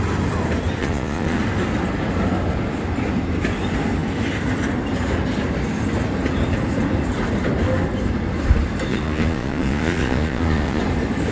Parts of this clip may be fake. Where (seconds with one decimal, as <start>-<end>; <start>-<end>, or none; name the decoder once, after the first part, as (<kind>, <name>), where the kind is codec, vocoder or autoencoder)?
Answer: 0.8-1.4 (vocoder, Vocos); 8.9-10.8